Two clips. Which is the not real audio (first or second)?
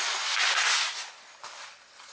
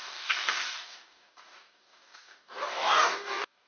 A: second